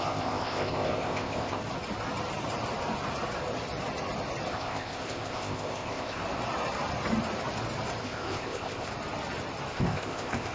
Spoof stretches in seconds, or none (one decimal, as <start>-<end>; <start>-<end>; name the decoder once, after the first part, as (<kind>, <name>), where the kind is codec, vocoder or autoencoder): 0.0-1.6 (codec, ZipCodec); 4.5-6.2; 8.0-8.9; 9.7-10.5